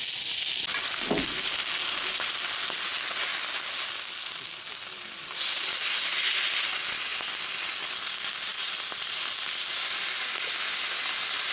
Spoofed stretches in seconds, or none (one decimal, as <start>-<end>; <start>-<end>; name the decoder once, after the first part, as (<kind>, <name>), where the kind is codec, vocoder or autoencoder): none